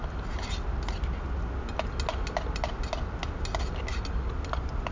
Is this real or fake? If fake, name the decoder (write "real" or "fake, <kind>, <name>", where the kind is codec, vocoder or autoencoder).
real